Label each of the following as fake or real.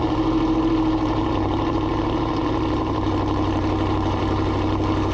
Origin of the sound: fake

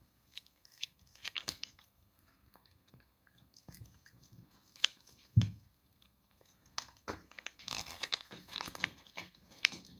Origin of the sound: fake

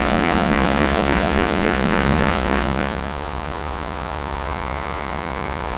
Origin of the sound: fake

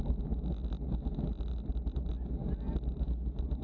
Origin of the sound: real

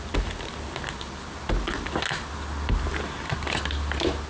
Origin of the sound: real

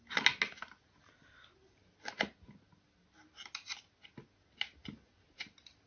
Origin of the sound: real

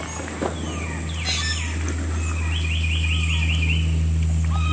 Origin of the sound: real